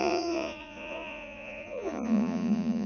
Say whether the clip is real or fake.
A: fake